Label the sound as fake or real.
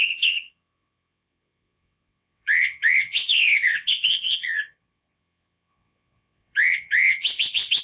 fake